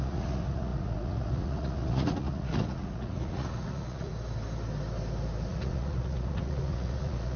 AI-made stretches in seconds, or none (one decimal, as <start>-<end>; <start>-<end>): 0.0-4.1; 5.5-7.4